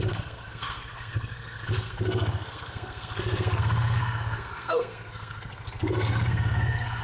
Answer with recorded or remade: remade